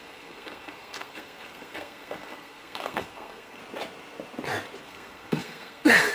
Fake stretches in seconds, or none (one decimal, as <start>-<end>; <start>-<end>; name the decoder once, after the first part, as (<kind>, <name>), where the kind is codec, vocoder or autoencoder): 0.0-3.6 (codec, SNAC); 4.8-6.1